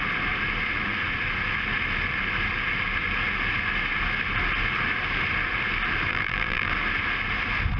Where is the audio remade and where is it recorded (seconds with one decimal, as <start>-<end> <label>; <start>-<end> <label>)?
0.0-6.1 recorded; 6.1-6.7 remade; 6.7-7.8 recorded

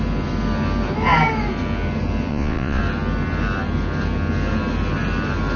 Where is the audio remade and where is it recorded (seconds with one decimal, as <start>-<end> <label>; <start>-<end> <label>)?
0.0-2.3 recorded; 2.3-2.8 remade; 2.8-5.6 recorded